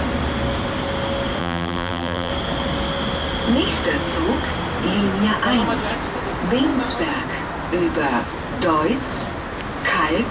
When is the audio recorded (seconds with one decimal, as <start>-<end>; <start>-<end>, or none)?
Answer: 0.0-1.4; 2.3-10.3